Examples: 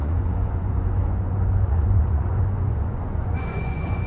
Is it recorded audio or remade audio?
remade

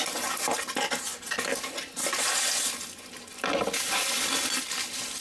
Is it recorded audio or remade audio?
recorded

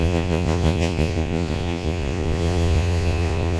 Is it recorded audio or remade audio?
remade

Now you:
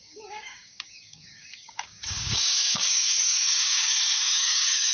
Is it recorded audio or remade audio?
remade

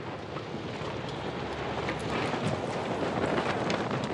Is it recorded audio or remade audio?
recorded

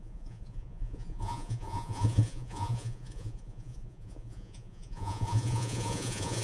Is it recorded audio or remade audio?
remade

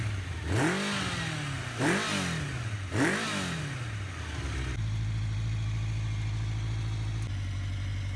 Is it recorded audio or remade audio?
recorded